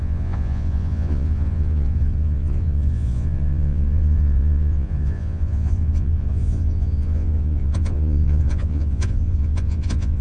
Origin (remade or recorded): remade